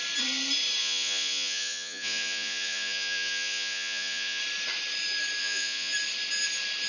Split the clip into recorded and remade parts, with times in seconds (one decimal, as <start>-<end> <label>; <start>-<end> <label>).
0.0-0.8 recorded; 0.8-4.4 remade; 4.4-5.4 recorded; 5.4-5.9 remade; 5.9-6.9 recorded